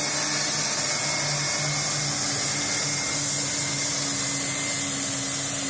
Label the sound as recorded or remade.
recorded